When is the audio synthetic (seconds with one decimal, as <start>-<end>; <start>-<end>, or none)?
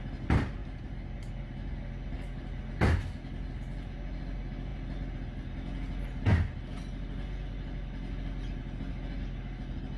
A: none